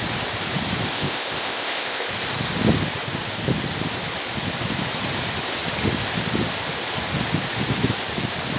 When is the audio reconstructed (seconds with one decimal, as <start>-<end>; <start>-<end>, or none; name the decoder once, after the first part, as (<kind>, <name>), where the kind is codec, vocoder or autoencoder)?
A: 0.9-2.1 (codec, ZipCodec)